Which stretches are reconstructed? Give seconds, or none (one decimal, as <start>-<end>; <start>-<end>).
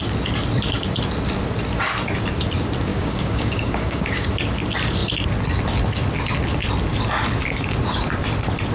2.9-4.3